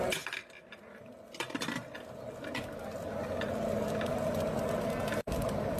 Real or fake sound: real